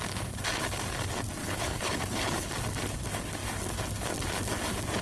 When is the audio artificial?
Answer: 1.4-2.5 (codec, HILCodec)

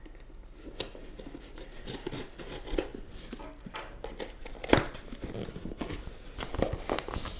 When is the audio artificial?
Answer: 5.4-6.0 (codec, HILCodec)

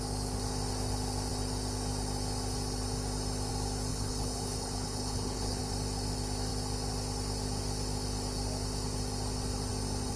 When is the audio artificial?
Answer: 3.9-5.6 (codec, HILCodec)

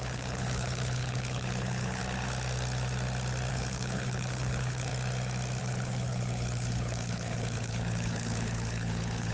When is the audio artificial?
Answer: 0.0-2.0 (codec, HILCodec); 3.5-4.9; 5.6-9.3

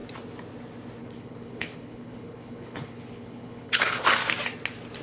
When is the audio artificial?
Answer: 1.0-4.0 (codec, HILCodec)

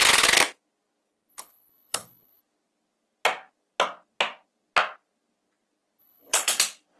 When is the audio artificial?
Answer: 1.3-2.4 (codec, HILCodec); 6.0-6.6

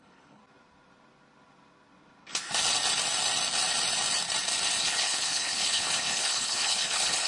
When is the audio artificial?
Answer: 0.0-0.4 (codec, HILCodec); 4.8-7.3

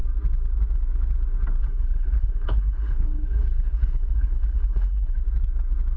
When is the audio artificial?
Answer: 1.6-5.2 (codec, HILCodec)